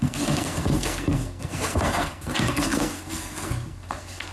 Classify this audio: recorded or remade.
remade